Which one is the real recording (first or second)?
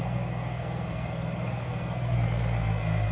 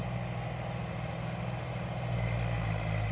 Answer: second